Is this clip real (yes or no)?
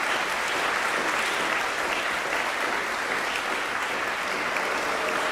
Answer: yes